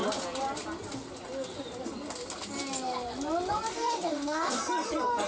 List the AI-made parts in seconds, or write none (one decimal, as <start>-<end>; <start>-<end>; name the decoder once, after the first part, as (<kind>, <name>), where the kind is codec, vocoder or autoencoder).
3.7-4.6 (codec, DAC)